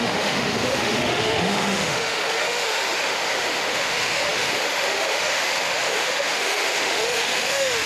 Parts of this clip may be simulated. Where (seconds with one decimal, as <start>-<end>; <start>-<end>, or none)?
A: 0.0-7.9